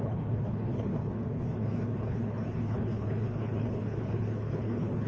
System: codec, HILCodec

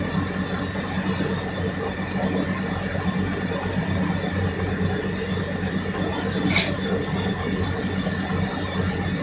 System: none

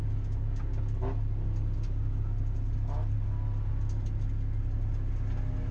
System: none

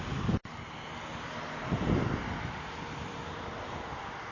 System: none